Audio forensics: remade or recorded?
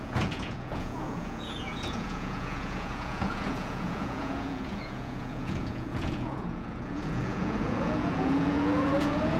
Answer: remade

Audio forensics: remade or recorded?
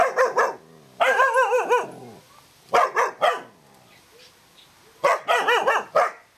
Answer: recorded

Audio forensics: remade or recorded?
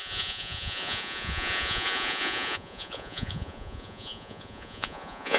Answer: remade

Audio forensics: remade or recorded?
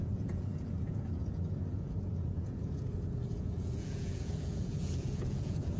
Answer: remade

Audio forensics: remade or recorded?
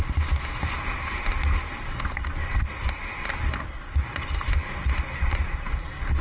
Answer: recorded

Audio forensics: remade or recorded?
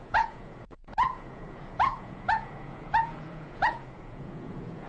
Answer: remade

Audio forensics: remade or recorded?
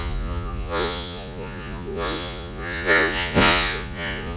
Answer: remade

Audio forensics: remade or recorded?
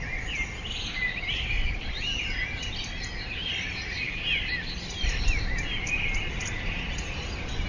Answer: recorded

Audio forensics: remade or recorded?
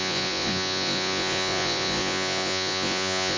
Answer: remade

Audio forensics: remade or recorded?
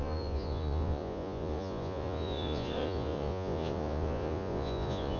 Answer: remade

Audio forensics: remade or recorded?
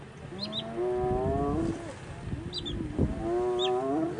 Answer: recorded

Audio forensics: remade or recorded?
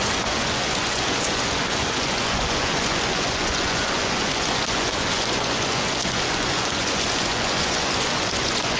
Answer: remade